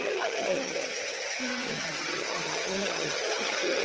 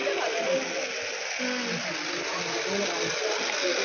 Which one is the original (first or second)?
second